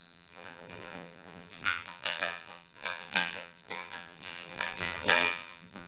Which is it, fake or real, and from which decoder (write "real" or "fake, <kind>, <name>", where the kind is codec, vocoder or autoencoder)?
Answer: fake, vocoder, BigVGAN v2